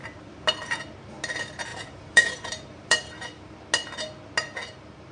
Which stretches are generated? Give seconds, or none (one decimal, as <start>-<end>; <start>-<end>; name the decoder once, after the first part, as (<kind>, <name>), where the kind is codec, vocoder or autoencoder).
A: 1.7-3.5 (vocoder, BigVGAN v2); 4.6-5.1